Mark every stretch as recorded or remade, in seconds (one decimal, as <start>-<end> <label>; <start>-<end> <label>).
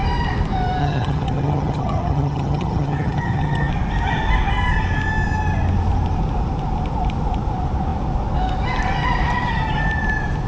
0.0-0.8 recorded; 0.8-3.7 remade; 3.7-10.5 recorded